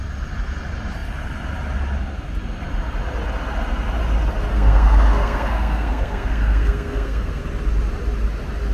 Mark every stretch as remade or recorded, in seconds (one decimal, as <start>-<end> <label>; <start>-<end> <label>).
0.0-4.5 recorded; 4.5-7.4 remade; 7.4-8.7 recorded

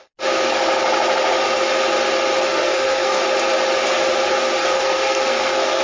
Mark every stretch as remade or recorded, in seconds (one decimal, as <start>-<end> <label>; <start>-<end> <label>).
0.0-2.5 recorded; 2.5-3.2 remade; 3.2-4.6 recorded; 4.6-5.8 remade

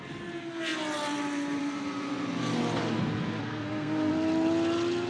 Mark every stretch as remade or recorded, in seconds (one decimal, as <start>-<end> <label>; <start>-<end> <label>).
0.0-3.5 recorded; 3.5-4.1 remade; 4.1-5.1 recorded

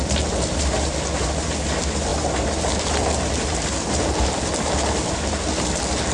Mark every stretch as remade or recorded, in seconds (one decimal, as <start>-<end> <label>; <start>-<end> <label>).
0.0-6.1 recorded

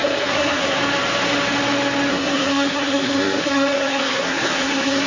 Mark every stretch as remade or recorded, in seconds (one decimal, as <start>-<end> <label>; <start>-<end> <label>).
0.0-0.8 remade; 0.8-2.1 recorded; 2.1-5.1 remade

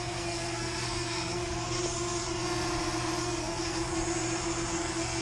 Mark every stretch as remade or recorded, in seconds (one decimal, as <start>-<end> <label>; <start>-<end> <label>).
0.0-1.4 remade; 1.4-3.2 recorded; 3.2-3.9 remade; 3.9-4.7 recorded; 4.7-5.2 remade

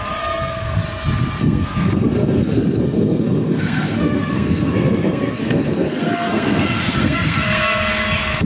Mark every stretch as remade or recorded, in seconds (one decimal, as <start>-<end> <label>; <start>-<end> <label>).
0.0-0.8 remade; 0.8-1.4 recorded; 1.4-8.5 remade

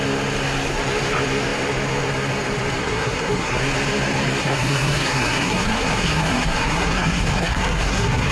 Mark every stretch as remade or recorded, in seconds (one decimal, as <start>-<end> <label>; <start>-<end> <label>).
0.0-2.8 recorded; 2.8-3.6 remade; 3.6-4.4 recorded; 4.4-8.3 remade